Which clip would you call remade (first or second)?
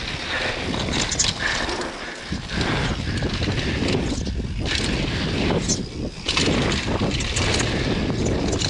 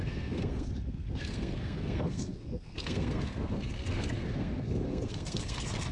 second